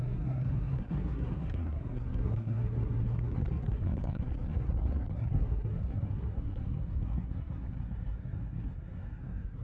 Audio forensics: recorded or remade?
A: remade